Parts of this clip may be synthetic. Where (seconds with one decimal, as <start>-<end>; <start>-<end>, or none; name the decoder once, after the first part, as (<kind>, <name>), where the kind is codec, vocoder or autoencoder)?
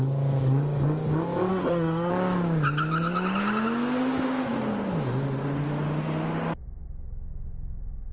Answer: 1.5-2.1 (codec, SNAC)